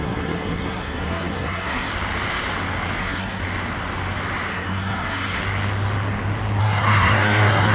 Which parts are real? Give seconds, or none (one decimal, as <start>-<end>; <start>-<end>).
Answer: 1.9-3.0; 3.4-4.5; 5.4-6.6